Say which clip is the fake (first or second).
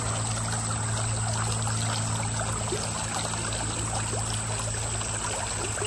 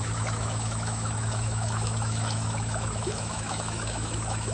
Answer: second